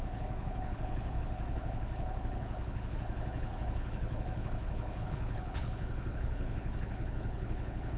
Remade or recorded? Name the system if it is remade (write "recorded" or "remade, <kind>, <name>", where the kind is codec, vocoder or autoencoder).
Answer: remade, codec, HILCodec